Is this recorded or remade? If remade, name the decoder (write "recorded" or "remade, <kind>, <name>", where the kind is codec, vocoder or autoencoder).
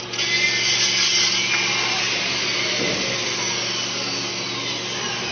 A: recorded